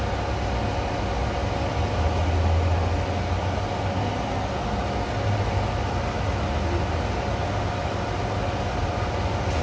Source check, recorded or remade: recorded